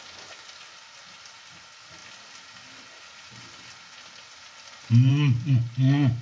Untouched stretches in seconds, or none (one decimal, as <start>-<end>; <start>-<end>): 0.0-6.2